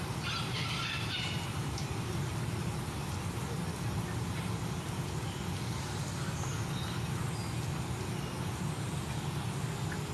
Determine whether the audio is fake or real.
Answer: real